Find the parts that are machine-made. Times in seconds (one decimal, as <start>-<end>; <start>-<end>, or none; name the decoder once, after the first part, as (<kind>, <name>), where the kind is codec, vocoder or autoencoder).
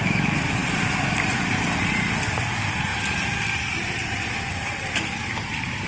none